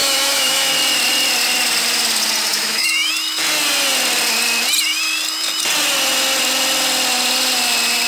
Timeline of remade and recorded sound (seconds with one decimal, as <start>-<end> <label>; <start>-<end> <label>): 0.0-0.7 remade; 0.7-2.5 recorded; 2.5-3.1 remade; 3.1-8.1 recorded